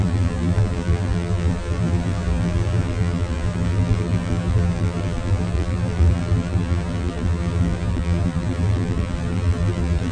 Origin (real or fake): fake